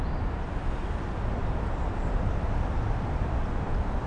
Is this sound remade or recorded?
recorded